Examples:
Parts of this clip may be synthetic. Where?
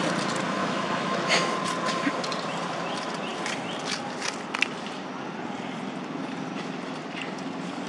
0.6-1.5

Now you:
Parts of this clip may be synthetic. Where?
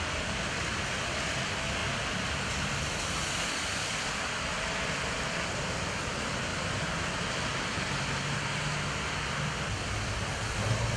none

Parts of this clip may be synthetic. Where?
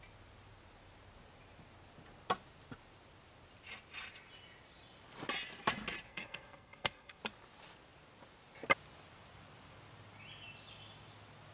6.1-7.2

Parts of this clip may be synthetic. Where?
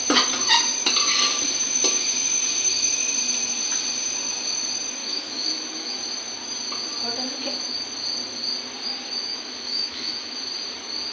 5.0-6.0; 9.3-10.4